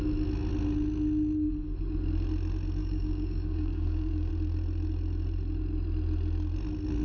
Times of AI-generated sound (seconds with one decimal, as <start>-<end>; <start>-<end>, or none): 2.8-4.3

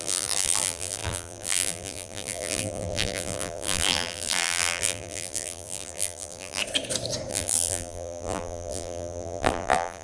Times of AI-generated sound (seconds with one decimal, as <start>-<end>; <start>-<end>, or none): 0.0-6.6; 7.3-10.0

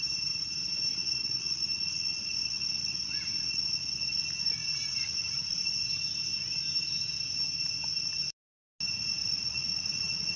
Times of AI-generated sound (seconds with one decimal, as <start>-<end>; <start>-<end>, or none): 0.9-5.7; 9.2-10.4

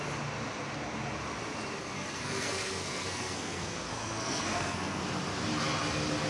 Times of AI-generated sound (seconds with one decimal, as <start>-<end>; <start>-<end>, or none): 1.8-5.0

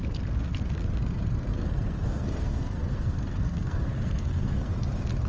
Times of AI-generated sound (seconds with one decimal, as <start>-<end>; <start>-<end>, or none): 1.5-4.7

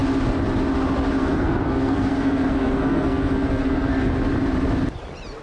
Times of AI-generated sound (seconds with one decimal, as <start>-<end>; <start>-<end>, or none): 1.1-4.1

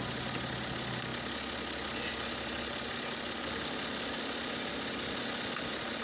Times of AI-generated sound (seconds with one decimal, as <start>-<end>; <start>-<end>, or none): none

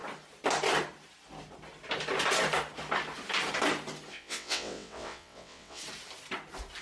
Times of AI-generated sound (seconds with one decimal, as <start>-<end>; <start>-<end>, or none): 4.1-5.8